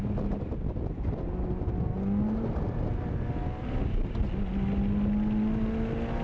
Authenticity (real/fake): real